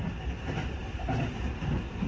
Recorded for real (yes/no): yes